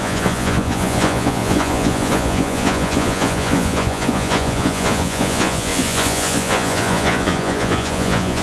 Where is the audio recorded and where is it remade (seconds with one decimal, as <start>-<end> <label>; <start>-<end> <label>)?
0.0-8.4 remade